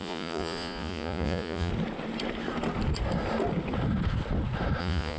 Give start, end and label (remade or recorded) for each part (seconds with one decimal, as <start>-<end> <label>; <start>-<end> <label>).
0.0-1.7 remade; 1.7-4.8 recorded; 4.8-5.2 remade